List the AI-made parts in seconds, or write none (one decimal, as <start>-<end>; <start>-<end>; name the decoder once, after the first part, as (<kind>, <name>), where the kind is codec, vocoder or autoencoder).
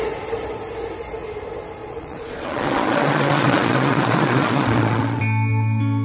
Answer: 1.8-5.2 (vocoder, Vocos)